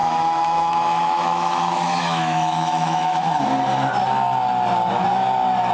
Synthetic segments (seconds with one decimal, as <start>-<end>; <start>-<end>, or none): 0.0-3.4